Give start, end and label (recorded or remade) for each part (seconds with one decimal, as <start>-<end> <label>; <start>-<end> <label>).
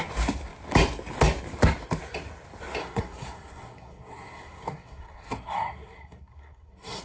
0.0-2.8 recorded; 2.8-7.0 remade